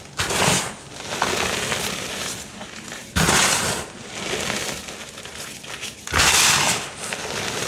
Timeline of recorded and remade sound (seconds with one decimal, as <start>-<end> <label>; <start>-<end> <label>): 0.0-7.7 recorded